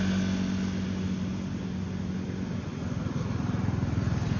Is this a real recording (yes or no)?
yes